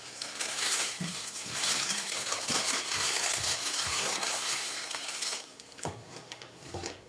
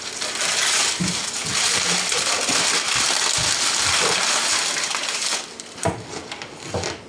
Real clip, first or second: second